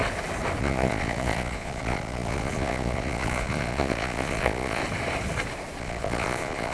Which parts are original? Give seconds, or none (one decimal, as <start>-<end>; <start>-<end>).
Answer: 0.0-0.6; 4.8-5.8